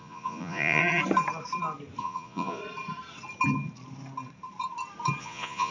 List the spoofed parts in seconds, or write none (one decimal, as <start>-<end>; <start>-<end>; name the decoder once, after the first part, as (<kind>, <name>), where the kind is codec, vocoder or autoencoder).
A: 0.0-0.8 (vocoder, Vocos); 2.0-2.6; 5.2-5.7